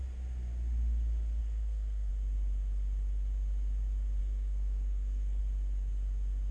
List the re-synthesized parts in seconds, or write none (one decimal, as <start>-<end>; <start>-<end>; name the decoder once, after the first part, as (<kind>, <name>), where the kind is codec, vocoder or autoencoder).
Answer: 1.4-2.1 (codec, SNAC); 4.2-5.4